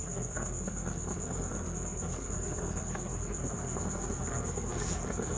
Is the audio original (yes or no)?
no